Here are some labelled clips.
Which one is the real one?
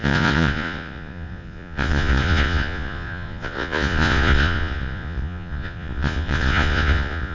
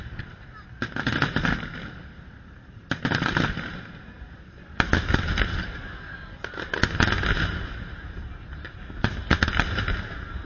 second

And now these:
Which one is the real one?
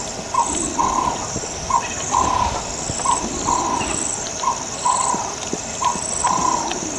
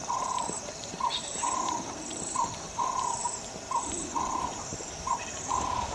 first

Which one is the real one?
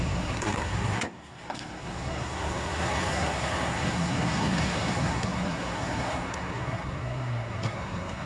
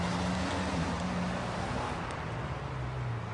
second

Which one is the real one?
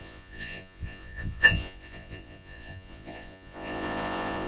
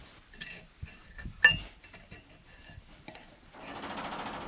second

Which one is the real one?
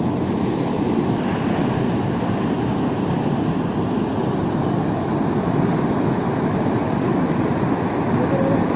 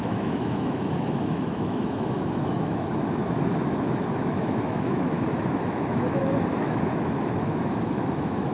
first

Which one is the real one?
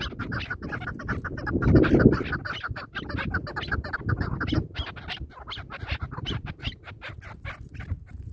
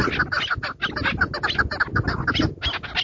second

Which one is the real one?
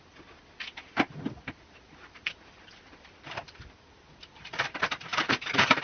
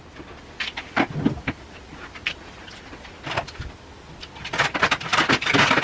second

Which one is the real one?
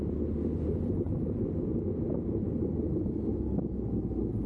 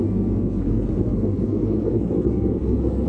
first